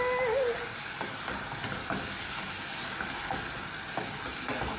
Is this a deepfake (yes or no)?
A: no